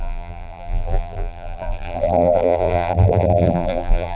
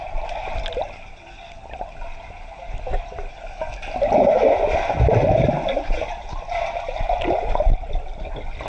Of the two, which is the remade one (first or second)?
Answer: first